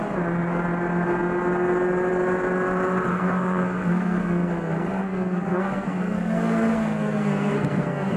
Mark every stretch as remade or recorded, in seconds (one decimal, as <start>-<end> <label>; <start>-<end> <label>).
0.0-3.1 recorded; 3.1-8.2 remade